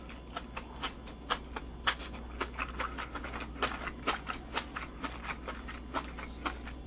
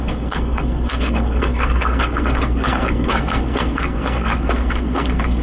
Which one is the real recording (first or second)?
first